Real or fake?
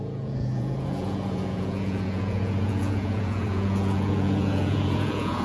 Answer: fake